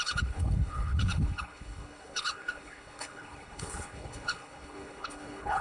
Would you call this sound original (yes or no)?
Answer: no